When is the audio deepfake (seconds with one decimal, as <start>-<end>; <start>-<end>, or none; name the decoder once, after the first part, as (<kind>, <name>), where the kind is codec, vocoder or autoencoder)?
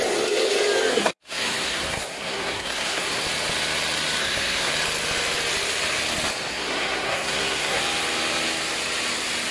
0.9-3.2 (codec, SNAC); 4.2-4.7; 6.5-7.8